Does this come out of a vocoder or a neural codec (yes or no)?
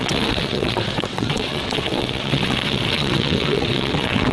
yes